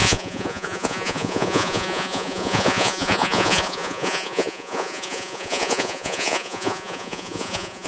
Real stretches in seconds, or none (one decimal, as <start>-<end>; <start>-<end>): none